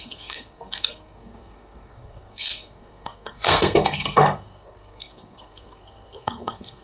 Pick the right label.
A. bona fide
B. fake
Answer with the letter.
B